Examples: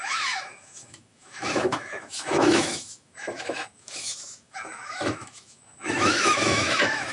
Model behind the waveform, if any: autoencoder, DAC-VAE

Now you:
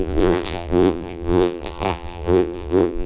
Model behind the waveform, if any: vocoder, BigVGAN v2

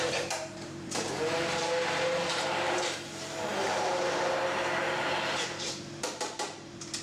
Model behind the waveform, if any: vocoder, BigVGAN v2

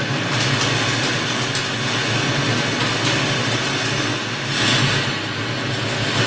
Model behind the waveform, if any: none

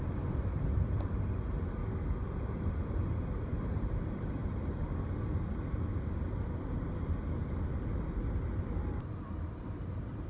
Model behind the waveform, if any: none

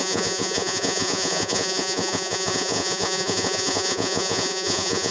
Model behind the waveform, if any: vocoder, Vocos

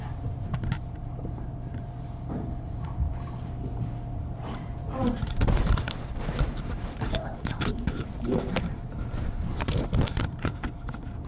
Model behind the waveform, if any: vocoder, BigVGAN v2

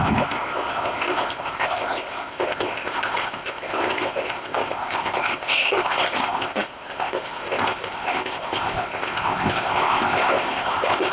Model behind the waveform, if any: codec, ZipCodec